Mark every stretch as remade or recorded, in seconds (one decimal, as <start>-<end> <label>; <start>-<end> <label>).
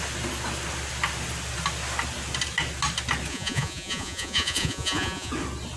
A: 0.0-3.3 recorded; 3.3-5.3 remade; 5.3-5.8 recorded